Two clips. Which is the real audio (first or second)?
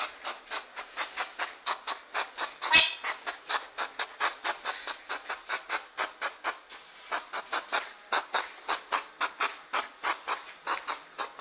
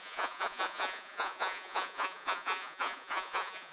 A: first